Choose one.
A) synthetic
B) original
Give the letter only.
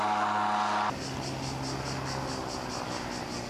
B